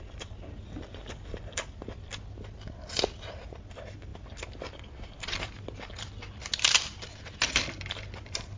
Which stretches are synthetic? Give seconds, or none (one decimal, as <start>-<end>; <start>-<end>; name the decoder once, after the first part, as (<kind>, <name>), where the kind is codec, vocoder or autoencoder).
none